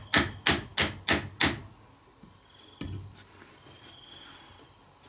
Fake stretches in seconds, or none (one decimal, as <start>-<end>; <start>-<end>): none